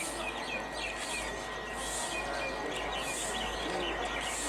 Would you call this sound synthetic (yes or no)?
no